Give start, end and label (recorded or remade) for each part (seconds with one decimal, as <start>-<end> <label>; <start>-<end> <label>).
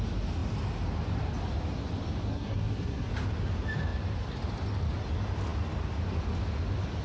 0.0-2.3 recorded; 2.3-3.1 remade; 3.1-7.0 recorded